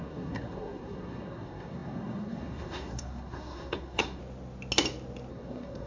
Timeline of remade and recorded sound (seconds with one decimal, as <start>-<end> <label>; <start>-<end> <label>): 0.0-4.2 remade; 4.2-5.3 recorded; 5.3-5.9 remade

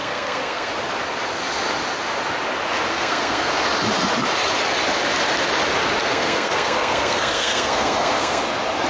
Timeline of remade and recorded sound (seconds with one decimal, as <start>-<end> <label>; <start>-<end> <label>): 0.0-0.7 remade; 0.7-2.9 recorded; 2.9-3.5 remade; 3.5-6.0 recorded; 6.0-8.4 remade; 8.4-8.9 recorded

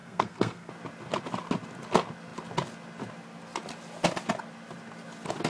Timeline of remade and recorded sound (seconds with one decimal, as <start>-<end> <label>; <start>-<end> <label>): 0.0-0.7 remade; 0.7-5.5 recorded

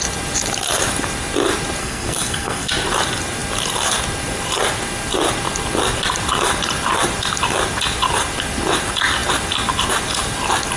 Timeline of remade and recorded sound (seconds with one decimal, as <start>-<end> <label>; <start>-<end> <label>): 0.0-1.8 recorded; 1.8-2.7 remade; 2.7-10.8 recorded

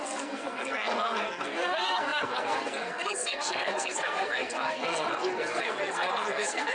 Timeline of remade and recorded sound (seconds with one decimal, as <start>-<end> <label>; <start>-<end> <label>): 0.0-6.7 remade

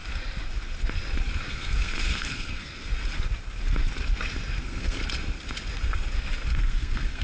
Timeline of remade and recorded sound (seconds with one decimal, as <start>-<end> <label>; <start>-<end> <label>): 0.0-1.5 recorded; 1.5-2.9 remade; 2.9-4.6 recorded; 4.6-5.0 remade; 5.0-6.5 recorded; 6.5-7.2 remade

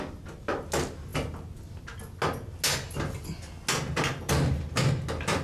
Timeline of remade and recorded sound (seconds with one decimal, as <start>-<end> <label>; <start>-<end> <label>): 0.0-5.4 recorded